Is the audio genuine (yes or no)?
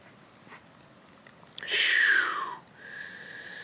yes